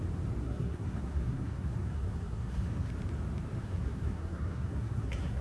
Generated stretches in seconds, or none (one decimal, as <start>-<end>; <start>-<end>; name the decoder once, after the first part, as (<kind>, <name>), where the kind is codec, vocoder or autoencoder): 0.4-2.9 (codec, SNAC); 3.6-5.4